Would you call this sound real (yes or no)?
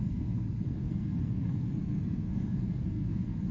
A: no